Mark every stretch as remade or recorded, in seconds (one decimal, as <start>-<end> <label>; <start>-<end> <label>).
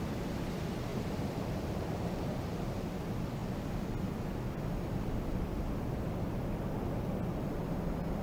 0.0-0.9 recorded; 0.9-2.7 remade; 2.7-8.2 recorded